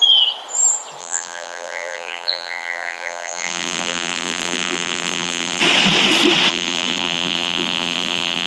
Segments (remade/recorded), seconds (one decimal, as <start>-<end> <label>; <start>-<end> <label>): 0.0-1.0 recorded; 1.0-5.6 remade; 5.6-6.5 recorded; 6.5-8.5 remade